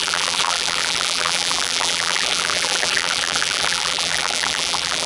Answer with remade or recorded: remade